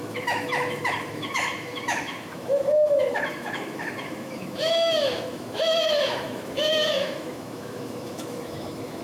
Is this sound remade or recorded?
remade